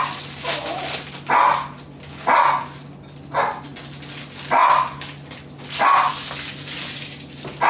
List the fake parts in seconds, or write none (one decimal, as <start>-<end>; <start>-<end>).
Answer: none